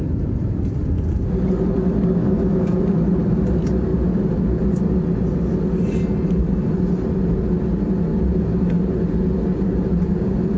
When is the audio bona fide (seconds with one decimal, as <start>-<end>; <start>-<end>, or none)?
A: 0.0-2.2; 2.8-10.6